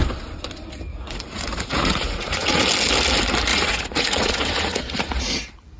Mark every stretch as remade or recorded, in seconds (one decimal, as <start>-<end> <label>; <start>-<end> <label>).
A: 0.0-0.9 recorded; 0.9-2.6 remade; 2.6-3.5 recorded; 3.5-5.2 remade; 5.2-5.8 recorded